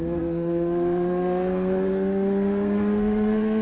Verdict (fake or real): fake